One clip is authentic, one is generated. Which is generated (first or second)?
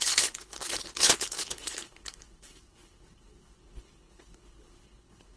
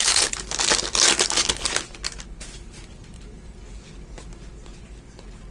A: first